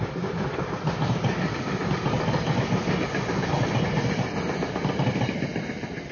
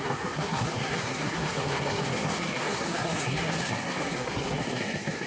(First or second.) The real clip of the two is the first